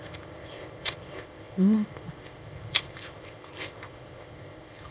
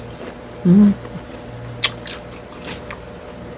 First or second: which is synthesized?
first